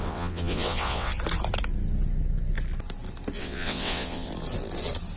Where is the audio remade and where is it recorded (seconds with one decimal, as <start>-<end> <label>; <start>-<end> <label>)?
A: 0.0-1.1 remade; 1.1-3.4 recorded; 3.4-4.3 remade; 4.3-5.2 recorded